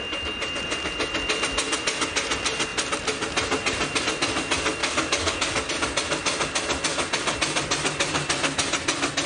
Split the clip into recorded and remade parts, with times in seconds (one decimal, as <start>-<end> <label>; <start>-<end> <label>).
0.0-4.8 recorded; 4.8-5.7 remade; 5.7-9.3 recorded